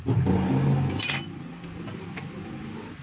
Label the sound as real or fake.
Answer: real